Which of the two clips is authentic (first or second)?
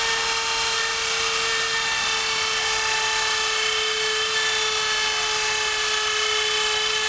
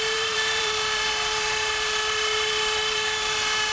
first